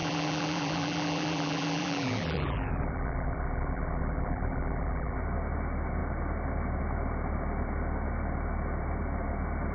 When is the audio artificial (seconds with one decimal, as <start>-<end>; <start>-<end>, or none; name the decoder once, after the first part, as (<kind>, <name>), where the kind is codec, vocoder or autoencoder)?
0.0-5.2 (vocoder, BigVGAN v2)

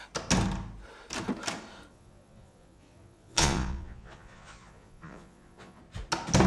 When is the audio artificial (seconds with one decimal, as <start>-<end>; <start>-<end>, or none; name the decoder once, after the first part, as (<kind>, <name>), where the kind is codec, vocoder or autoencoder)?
1.9-5.8 (vocoder, Vocos)

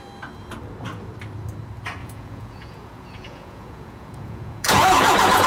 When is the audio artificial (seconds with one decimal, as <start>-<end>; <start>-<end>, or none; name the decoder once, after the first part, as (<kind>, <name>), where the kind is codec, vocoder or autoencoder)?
2.0-5.5 (vocoder, Vocos)

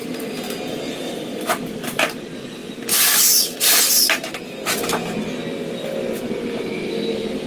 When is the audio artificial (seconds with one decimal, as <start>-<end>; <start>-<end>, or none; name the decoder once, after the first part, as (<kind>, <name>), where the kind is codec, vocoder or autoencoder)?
none

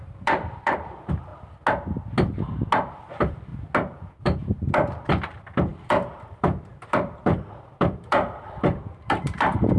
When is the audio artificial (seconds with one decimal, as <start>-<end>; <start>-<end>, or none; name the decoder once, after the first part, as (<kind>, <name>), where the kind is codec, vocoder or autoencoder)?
0.0-1.3 (vocoder, BigVGAN v2); 3.0-3.5; 4.2-9.8

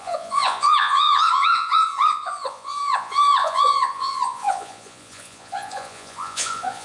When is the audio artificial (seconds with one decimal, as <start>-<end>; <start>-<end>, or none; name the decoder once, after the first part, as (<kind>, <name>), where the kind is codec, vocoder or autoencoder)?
0.0-6.8 (vocoder, Vocos)